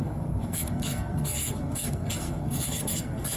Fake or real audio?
fake